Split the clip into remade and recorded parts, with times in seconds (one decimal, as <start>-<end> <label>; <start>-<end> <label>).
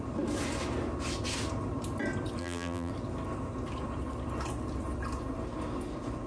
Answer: 0.0-2.4 recorded; 2.4-2.9 remade; 2.9-6.3 recorded